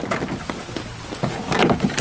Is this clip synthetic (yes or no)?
no